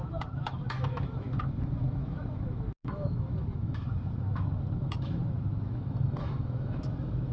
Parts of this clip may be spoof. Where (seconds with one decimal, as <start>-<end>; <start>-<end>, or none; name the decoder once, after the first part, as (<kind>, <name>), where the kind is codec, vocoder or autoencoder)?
0.0-7.3 (autoencoder, DAC-VAE)